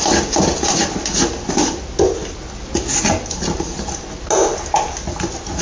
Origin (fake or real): real